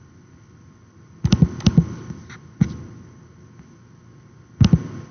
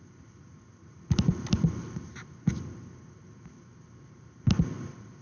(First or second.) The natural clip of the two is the first